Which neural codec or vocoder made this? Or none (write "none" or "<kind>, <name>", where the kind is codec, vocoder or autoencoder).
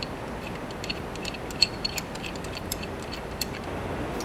none